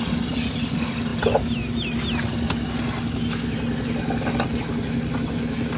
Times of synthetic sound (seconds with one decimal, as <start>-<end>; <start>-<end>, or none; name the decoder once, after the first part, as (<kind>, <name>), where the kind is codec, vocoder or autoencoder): none